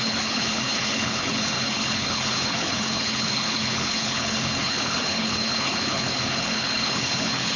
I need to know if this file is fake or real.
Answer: fake